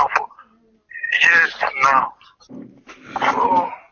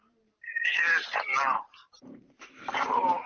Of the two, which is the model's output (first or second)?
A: second